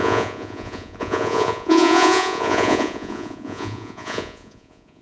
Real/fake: fake